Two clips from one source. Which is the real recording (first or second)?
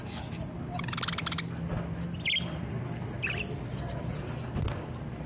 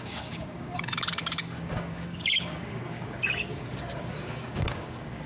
first